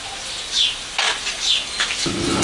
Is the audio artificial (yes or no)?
no